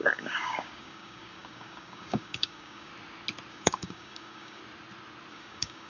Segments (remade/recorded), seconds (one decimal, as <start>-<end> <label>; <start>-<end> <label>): 0.0-2.9 remade; 2.9-3.5 recorded; 3.5-4.6 remade; 4.6-5.3 recorded; 5.3-5.9 remade